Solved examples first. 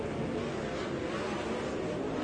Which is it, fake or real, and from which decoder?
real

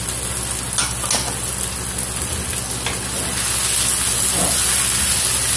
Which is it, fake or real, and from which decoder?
real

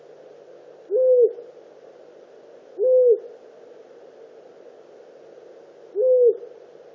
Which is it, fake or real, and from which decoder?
real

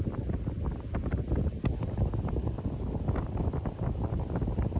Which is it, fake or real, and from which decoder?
real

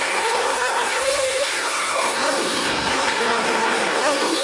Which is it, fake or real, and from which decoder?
fake, codec, SNAC